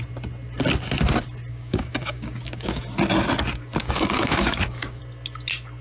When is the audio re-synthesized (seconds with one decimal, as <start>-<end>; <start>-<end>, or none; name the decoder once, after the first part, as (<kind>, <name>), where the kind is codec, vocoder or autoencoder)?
1.5-2.8 (codec, DAC); 3.8-5.0